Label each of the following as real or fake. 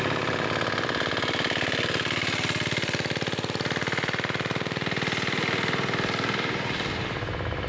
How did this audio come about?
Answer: real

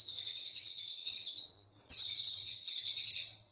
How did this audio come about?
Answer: fake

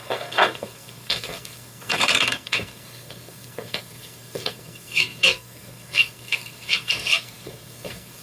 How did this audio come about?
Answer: fake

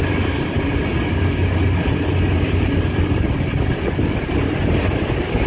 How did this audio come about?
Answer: real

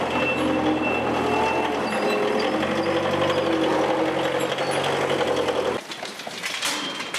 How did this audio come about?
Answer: real